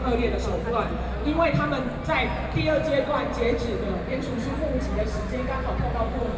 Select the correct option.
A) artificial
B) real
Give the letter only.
B